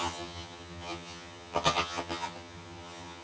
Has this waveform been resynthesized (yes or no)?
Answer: yes